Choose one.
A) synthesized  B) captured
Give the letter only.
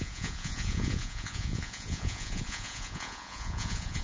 A